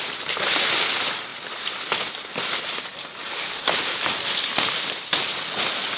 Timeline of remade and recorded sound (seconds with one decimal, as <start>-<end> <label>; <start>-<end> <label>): 0.0-6.0 recorded